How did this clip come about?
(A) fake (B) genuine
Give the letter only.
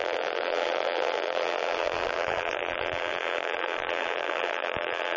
A